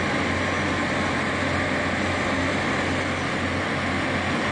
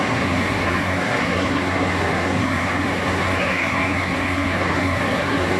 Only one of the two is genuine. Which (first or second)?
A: first